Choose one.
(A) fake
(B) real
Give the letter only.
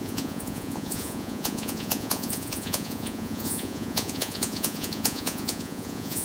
A